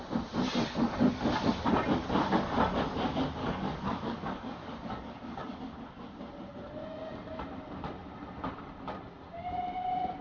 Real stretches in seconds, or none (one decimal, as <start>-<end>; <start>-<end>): 0.0-3.4; 5.6-10.2